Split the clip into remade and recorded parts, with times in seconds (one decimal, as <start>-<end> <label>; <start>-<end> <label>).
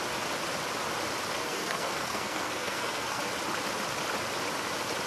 0.0-1.4 recorded; 1.4-3.2 remade; 3.2-5.1 recorded